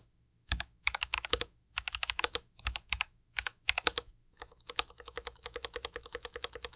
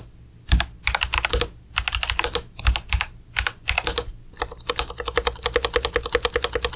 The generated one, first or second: first